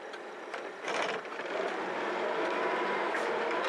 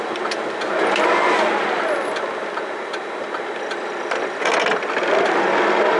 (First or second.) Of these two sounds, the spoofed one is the first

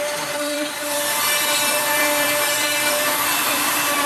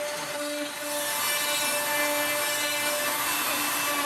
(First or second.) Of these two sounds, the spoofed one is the first